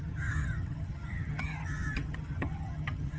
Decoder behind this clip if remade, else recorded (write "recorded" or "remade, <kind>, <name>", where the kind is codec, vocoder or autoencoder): remade, vocoder, HiFi-GAN